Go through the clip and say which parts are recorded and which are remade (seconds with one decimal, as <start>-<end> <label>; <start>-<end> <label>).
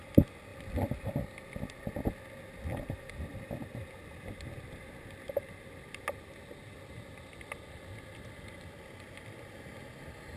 0.0-10.4 recorded